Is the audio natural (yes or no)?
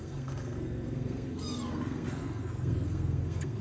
no